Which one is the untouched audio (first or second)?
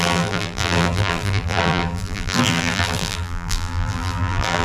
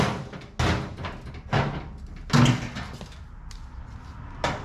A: second